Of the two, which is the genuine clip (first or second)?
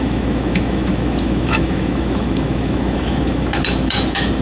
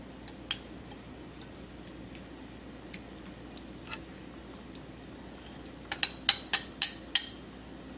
second